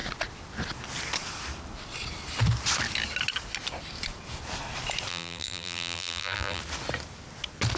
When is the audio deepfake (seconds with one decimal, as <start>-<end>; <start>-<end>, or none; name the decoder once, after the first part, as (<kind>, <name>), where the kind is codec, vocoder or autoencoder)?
5.1-6.6 (vocoder, BigVGAN v2)